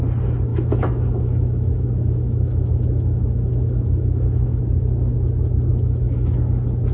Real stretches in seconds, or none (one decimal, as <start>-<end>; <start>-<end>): 0.0-0.5; 4.6-5.7; 6.4-6.9